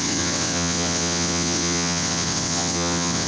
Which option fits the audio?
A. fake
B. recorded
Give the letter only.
A